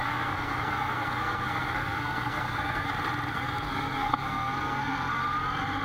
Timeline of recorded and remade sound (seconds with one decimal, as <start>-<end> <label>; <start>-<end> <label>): 0.0-2.9 remade; 2.9-3.3 recorded; 3.3-5.2 remade; 5.2-5.8 recorded